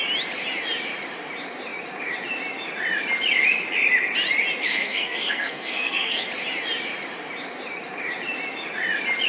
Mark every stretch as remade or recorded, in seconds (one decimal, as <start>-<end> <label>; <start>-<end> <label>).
0.0-4.7 recorded; 4.7-6.3 remade; 6.3-9.3 recorded